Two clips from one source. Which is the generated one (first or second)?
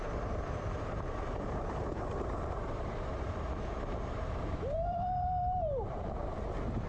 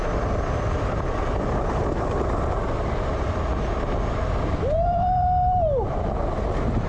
first